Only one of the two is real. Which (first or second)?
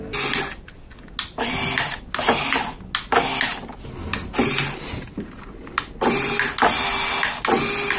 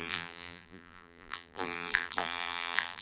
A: first